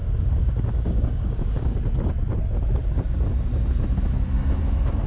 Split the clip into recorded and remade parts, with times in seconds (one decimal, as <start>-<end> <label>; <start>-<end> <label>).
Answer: 0.0-1.8 remade; 1.8-5.1 recorded